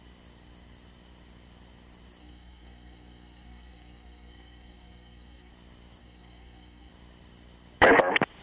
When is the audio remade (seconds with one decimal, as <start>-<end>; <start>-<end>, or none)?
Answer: 2.2-5.5; 6.0-6.9